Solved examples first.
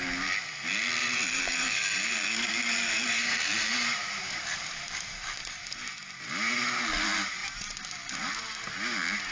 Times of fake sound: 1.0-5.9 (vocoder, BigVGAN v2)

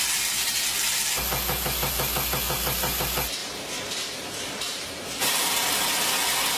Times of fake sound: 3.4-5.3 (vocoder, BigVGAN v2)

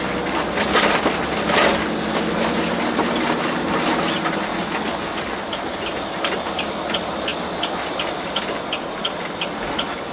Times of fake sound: 2.5-3.2 (vocoder, BigVGAN v2)

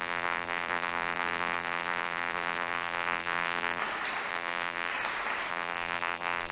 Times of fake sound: 0.0-3.8 (vocoder, BigVGAN v2); 4.3-4.9; 5.5-6.5

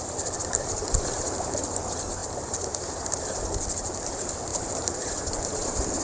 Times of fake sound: 1.1-1.6 (vocoder, BigVGAN v2); 4.5-6.0

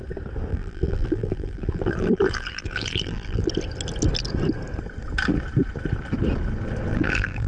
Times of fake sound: 0.5-3.5 (vocoder, BigVGAN v2); 6.9-7.5